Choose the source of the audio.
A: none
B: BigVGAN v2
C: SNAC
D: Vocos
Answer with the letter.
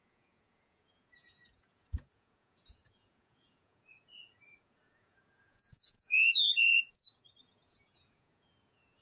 D